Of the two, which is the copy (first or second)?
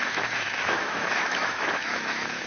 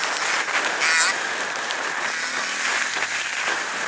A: first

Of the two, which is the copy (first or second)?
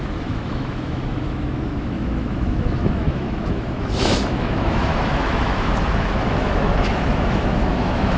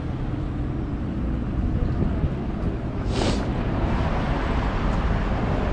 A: first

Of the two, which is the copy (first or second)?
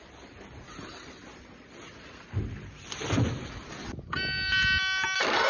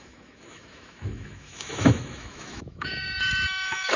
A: second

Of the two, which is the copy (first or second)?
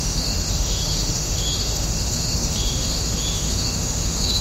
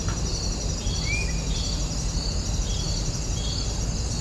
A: first